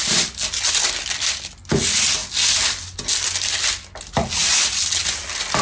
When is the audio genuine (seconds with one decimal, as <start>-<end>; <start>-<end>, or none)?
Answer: 0.0-5.6